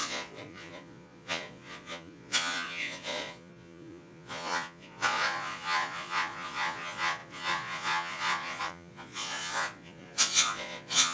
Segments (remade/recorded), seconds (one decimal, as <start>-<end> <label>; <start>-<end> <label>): 0.0-11.1 remade